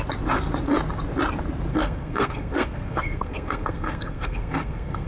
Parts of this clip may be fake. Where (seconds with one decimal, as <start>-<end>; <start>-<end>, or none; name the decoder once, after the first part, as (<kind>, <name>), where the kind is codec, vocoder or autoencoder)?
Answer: 1.7-5.1 (codec, SNAC)

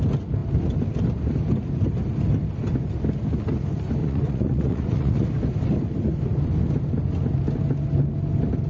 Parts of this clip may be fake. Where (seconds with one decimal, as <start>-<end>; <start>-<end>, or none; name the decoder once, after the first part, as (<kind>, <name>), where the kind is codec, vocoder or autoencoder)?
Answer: 4.0-5.3 (vocoder, Vocos)

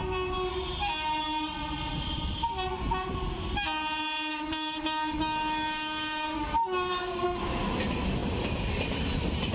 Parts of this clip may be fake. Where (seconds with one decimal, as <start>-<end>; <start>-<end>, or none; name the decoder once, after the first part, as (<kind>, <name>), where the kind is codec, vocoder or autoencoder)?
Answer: 4.3-7.5 (codec, DAC)

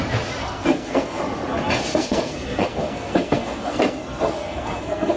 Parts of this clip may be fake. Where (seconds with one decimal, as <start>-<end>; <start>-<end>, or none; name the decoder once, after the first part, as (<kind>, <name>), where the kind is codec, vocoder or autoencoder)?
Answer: 0.4-1.2 (codec, SNAC); 1.9-5.2